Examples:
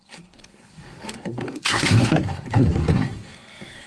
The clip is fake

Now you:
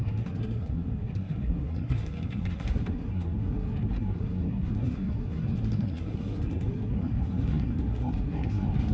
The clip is fake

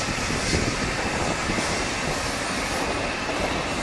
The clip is real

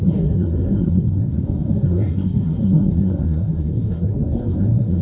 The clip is fake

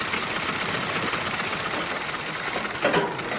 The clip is real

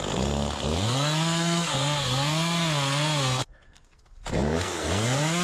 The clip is fake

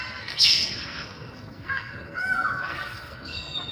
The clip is fake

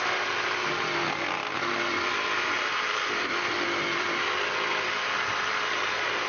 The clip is real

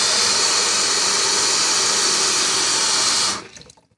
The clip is real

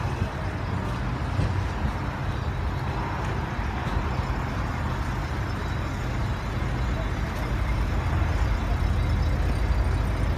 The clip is real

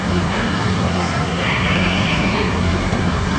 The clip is fake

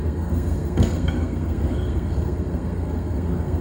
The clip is fake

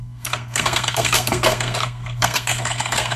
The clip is fake